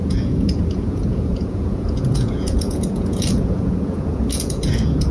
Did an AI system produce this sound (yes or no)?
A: yes